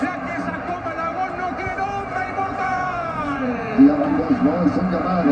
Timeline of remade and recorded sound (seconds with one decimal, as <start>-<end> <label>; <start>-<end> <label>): 0.0-2.1 recorded; 2.1-4.3 remade; 4.3-5.3 recorded